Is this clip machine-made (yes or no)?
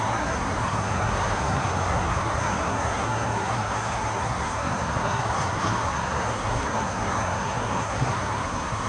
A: yes